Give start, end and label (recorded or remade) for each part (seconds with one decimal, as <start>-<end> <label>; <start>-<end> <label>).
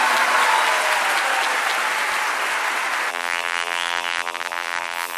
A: 0.0-3.1 recorded; 3.1-5.2 remade